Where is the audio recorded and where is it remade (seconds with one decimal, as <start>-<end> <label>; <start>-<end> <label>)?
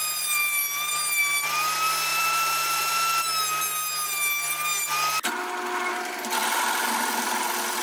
0.0-0.9 remade; 0.9-2.1 recorded; 2.1-2.9 remade; 2.9-6.4 recorded; 6.4-7.8 remade